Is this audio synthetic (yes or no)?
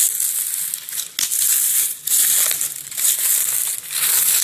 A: no